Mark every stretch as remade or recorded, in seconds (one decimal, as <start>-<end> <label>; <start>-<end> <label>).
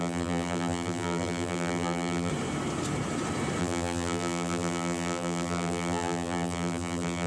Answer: 0.0-2.3 remade; 2.3-3.6 recorded; 3.6-7.3 remade